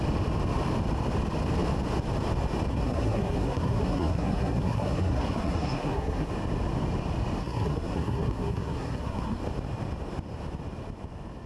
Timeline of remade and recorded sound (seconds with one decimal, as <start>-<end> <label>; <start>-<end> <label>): 0.0-2.7 recorded; 2.7-6.3 remade; 6.3-7.4 recorded; 7.4-9.4 remade; 9.4-11.5 recorded